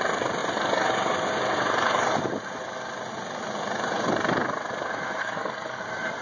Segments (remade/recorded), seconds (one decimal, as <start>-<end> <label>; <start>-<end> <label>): 0.0-5.2 recorded; 5.2-5.8 remade; 5.8-6.2 recorded